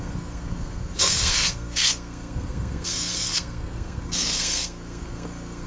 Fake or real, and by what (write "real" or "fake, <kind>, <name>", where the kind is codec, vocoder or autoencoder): fake, codec, SNAC